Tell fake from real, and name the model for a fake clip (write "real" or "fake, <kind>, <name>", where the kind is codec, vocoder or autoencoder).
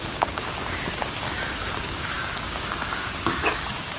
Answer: fake, codec, DAC